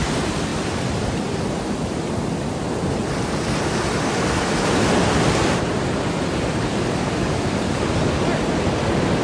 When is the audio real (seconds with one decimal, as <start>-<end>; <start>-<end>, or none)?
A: 0.0-6.7; 7.8-9.2